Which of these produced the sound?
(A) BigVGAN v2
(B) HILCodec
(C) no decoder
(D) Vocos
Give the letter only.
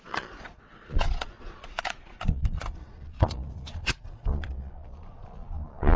D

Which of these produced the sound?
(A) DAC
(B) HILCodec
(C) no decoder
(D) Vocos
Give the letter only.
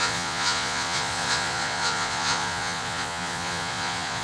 D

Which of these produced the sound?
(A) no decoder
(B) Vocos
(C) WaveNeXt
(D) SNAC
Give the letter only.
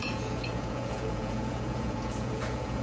B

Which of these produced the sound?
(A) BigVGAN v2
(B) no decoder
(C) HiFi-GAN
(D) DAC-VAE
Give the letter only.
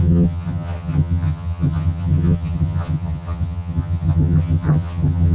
C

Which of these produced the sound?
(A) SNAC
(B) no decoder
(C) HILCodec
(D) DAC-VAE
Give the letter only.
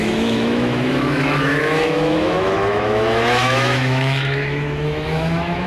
D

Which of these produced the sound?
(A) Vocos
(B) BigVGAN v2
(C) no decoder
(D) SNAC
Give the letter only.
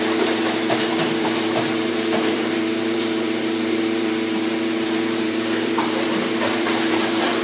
B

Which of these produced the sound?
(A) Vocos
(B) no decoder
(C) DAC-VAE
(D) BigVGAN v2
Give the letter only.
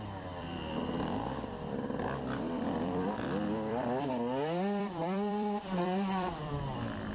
D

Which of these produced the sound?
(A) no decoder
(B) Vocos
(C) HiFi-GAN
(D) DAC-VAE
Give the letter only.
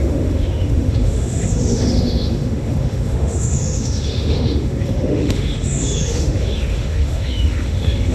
D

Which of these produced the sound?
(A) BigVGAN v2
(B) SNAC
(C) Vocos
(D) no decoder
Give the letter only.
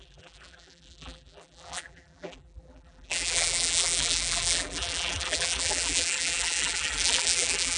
A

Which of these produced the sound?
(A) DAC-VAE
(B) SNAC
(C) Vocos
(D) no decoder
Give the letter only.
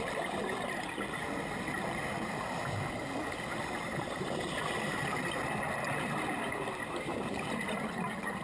D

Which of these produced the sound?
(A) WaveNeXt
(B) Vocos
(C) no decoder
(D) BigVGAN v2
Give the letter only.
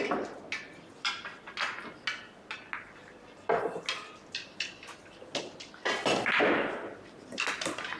C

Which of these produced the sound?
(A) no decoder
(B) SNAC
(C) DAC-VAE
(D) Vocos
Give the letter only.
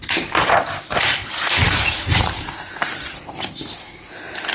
A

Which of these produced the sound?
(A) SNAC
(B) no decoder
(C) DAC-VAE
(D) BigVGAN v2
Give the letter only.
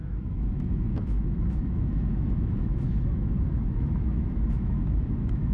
C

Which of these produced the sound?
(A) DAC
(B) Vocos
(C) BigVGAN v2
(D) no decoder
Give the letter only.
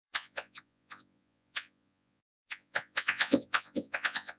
B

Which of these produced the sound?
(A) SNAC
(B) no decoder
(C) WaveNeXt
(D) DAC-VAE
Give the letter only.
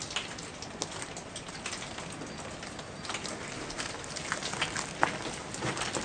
B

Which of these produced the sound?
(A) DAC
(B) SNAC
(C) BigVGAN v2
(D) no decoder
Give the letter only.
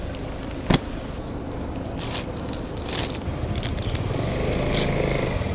D